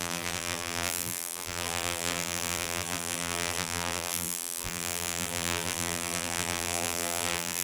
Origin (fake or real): fake